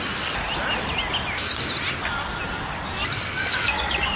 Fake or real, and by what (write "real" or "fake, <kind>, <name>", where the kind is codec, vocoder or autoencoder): real